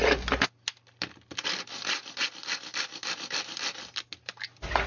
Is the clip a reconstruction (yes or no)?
no